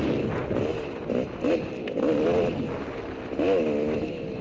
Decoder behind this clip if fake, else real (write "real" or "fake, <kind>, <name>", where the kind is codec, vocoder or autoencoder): real